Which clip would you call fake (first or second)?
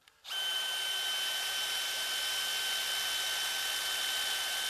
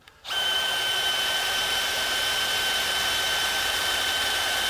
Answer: second